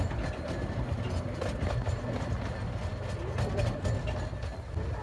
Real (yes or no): yes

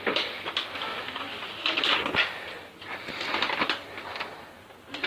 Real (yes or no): no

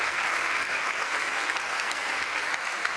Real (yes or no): no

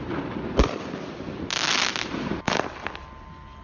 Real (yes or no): yes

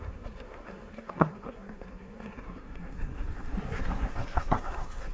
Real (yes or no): no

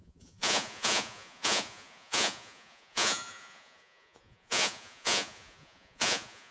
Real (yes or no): no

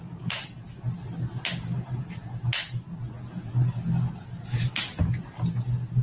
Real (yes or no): yes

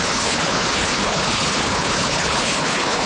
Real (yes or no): no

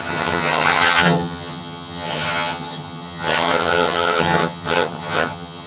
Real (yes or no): no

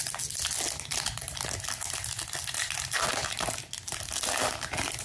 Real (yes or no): yes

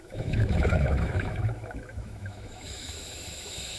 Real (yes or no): no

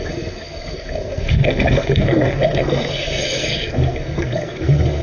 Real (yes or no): no